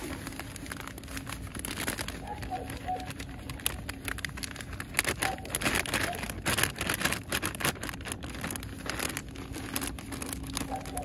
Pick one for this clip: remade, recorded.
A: recorded